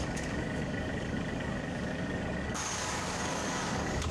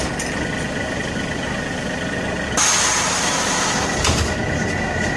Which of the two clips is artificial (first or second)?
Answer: first